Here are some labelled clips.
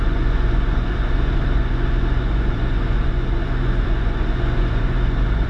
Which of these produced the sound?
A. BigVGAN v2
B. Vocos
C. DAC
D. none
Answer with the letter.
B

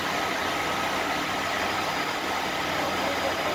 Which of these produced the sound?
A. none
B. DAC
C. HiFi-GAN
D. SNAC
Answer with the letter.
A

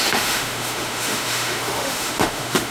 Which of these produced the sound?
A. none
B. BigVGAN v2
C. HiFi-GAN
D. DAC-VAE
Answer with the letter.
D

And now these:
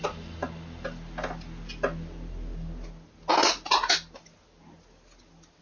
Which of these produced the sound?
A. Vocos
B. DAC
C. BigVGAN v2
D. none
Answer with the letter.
D